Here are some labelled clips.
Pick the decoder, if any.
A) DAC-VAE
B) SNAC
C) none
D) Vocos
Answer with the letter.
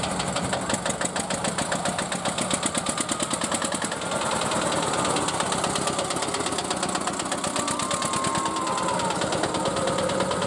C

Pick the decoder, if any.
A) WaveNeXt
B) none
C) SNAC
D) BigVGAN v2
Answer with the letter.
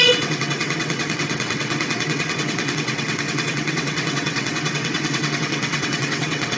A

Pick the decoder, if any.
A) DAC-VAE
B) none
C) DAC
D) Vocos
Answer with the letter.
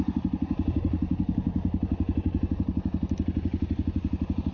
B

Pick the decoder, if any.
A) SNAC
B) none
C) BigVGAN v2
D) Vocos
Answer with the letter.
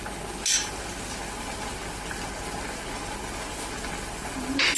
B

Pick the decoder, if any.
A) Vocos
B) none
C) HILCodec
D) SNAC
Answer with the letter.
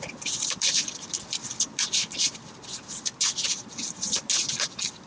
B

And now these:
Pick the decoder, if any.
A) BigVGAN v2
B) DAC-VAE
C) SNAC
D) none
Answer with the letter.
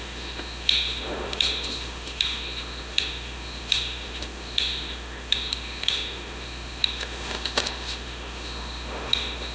B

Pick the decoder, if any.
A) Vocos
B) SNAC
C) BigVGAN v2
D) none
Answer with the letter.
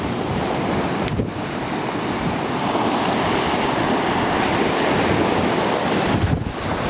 C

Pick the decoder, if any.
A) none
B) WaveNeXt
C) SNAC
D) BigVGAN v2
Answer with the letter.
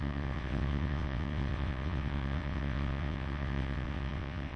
B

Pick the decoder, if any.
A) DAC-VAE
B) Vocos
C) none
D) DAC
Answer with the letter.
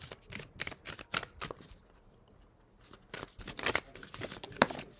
C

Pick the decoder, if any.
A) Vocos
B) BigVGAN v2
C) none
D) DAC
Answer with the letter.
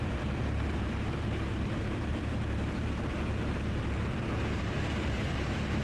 B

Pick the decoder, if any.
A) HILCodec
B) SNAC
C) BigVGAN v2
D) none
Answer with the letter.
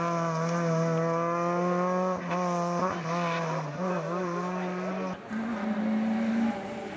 D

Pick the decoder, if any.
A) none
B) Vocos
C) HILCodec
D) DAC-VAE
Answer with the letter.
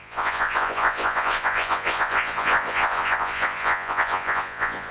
B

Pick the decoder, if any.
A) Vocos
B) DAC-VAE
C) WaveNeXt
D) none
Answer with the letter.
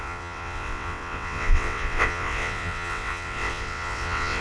C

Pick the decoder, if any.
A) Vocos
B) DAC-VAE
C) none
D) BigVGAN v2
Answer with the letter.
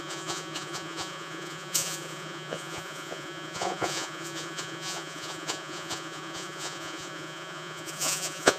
A